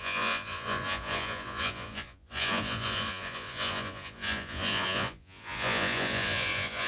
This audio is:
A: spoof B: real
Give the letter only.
A